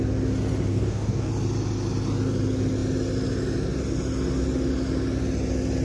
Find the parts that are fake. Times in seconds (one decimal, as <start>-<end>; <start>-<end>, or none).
0.7-1.3